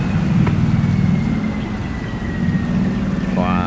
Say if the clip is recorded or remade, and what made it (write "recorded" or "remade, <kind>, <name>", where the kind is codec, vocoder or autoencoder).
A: recorded